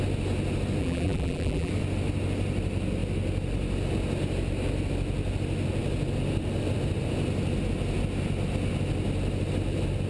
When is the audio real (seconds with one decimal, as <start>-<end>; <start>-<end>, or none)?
0.0-0.8; 1.7-10.1